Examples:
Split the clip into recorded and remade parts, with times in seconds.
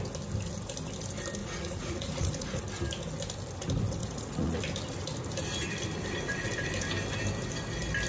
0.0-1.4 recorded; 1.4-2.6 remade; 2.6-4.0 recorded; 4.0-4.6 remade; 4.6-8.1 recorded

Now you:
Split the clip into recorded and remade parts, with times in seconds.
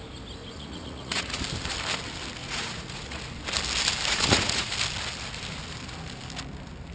0.0-0.4 recorded; 0.4-1.4 remade; 1.4-2.4 recorded; 2.4-3.2 remade; 3.2-4.1 recorded; 4.1-4.7 remade; 4.7-6.9 recorded